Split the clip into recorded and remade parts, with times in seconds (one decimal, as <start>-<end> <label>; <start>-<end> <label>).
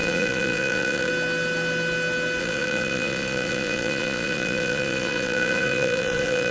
0.0-1.1 remade; 1.1-2.4 recorded; 2.4-6.5 remade